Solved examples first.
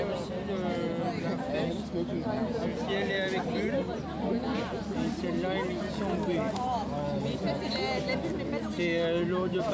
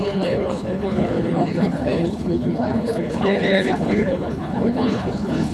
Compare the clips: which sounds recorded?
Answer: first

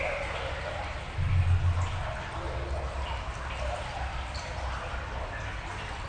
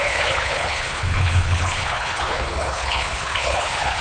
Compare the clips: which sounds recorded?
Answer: first